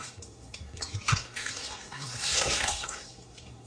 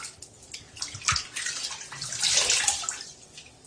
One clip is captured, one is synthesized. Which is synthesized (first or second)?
first